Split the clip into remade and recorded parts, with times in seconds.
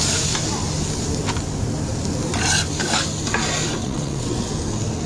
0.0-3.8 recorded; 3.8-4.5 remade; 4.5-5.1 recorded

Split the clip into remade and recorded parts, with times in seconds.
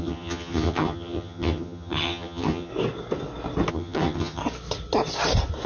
0.0-2.7 remade; 2.7-3.7 recorded; 3.7-4.4 remade; 4.4-5.7 recorded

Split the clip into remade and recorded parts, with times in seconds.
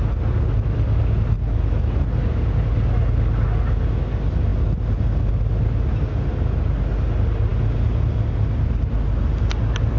0.0-10.0 recorded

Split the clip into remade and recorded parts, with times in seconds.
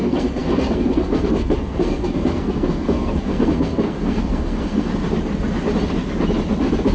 0.0-4.9 remade; 4.9-6.9 recorded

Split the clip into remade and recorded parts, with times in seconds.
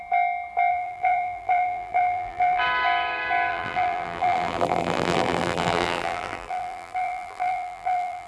0.0-0.7 recorded; 0.7-2.6 remade; 2.6-3.5 recorded; 3.5-8.3 remade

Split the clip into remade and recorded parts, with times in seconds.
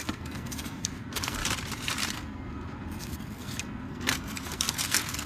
0.0-1.4 remade; 1.4-2.1 recorded; 2.1-5.3 remade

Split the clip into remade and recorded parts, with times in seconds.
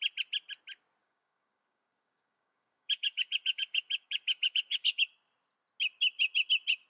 0.0-1.0 recorded; 1.0-5.1 remade; 5.1-6.9 recorded